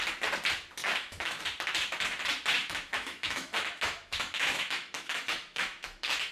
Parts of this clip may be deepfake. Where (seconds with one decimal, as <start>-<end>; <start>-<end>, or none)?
0.8-1.4; 2.6-6.3